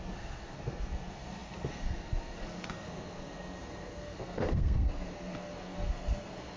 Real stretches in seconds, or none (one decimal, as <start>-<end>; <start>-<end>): none